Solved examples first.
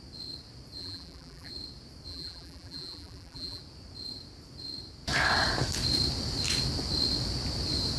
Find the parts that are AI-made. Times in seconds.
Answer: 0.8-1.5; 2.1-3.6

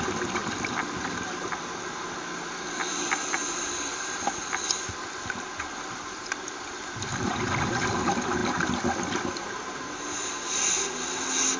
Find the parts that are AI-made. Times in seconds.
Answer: 0.0-0.4; 1.4-8.4

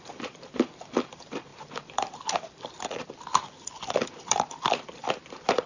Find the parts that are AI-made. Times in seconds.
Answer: 0.0-5.7

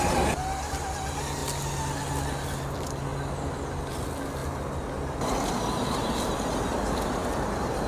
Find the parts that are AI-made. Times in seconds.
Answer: 7.2-7.9